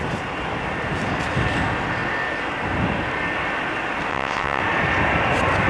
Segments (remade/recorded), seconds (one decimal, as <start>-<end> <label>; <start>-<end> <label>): 0.0-4.1 recorded; 4.1-4.6 remade; 4.6-5.7 recorded